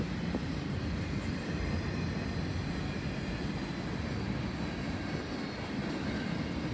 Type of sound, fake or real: real